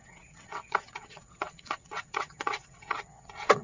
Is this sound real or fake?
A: fake